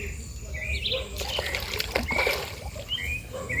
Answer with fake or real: real